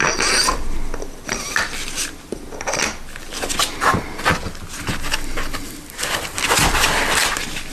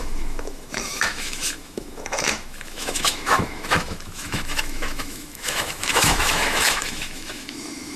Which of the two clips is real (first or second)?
first